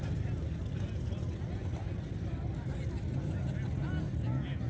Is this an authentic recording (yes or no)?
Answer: yes